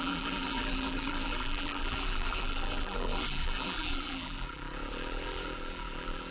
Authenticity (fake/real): fake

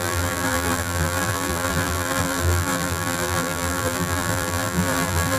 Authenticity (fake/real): fake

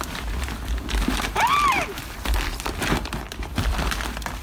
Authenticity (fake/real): fake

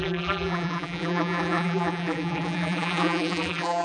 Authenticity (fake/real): fake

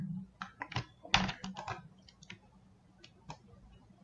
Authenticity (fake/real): real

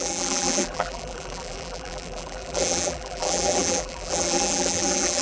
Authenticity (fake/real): fake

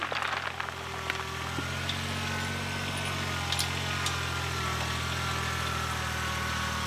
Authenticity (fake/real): real